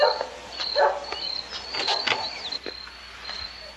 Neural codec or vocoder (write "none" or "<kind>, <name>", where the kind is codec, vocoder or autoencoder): none